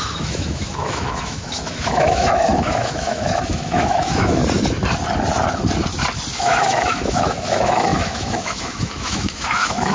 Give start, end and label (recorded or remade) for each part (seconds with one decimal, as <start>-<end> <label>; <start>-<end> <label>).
0.0-4.4 remade; 4.4-6.3 recorded; 6.3-9.9 remade

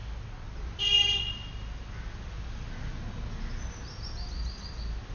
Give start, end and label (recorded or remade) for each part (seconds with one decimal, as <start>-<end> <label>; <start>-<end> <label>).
0.0-5.1 recorded

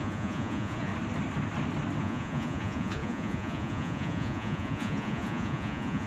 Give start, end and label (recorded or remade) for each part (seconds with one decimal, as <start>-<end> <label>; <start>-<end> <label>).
0.0-0.9 remade; 0.9-2.0 recorded; 2.0-6.1 remade

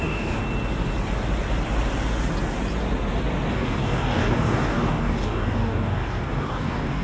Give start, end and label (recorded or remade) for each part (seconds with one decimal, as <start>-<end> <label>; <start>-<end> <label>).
0.0-0.4 remade; 0.4-3.5 recorded; 3.5-7.0 remade

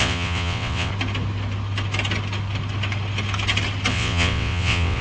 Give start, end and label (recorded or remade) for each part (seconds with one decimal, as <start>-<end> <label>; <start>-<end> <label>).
0.0-0.9 remade; 0.9-3.9 recorded; 3.9-5.0 remade

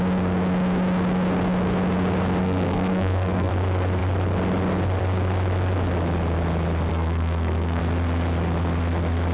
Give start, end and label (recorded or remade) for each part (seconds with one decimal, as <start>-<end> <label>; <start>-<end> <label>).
0.0-2.4 recorded; 2.4-3.5 remade; 3.5-6.9 recorded; 6.9-7.8 remade; 7.8-9.3 recorded

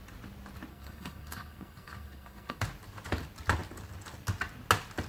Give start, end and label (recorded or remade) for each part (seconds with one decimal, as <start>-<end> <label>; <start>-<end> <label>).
0.0-0.7 recorded; 0.7-2.6 remade; 2.6-5.1 recorded

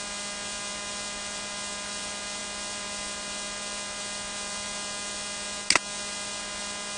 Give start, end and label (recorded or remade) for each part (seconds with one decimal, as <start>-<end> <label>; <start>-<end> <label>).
0.0-7.0 recorded